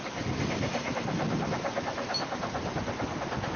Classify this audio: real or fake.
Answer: real